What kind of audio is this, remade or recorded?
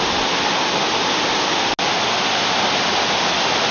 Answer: recorded